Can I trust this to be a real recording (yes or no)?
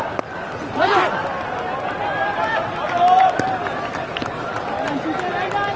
yes